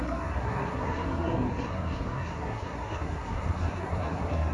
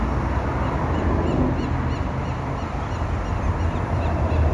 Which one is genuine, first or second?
second